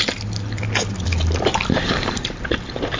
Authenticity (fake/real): fake